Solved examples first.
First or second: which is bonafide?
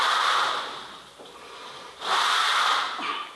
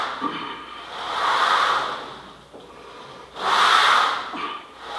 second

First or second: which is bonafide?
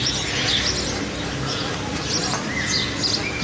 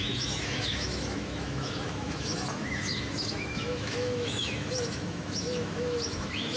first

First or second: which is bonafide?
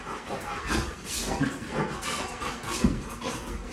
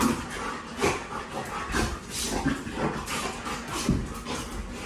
second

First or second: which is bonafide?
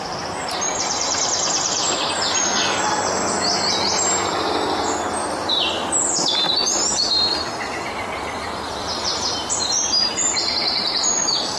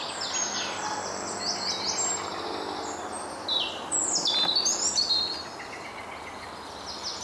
second